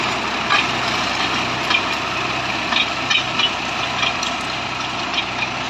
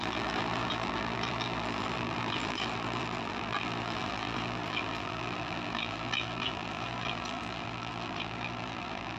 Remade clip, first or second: second